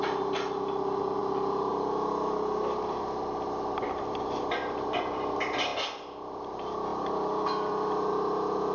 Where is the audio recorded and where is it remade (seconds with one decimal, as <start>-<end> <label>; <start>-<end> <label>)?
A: 0.0-1.7 remade; 1.7-2.8 recorded; 2.8-5.7 remade; 5.7-6.2 recorded; 6.2-8.7 remade